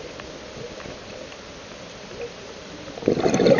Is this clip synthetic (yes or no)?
no